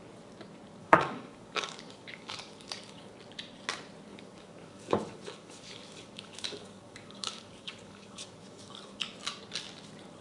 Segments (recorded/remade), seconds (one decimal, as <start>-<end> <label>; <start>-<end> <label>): 0.0-0.8 recorded; 0.8-3.1 remade; 3.1-4.1 recorded; 4.1-9.0 remade; 9.0-10.2 recorded